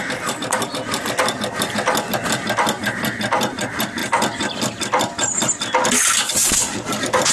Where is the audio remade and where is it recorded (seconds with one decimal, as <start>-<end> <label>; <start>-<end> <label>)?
0.0-7.3 recorded